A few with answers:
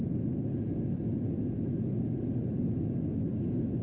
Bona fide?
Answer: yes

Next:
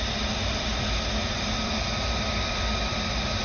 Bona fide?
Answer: yes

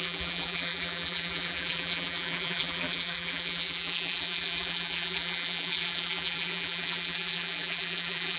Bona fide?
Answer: no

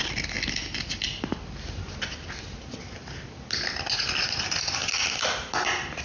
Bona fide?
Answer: yes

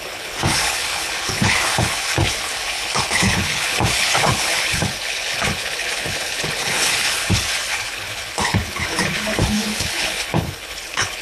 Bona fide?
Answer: no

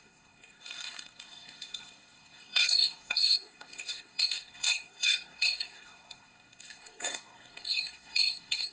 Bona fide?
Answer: no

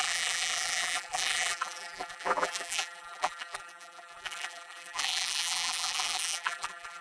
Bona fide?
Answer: no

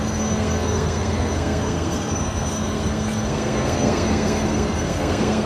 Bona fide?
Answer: no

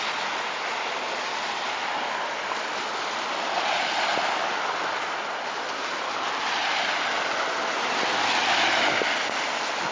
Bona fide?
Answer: yes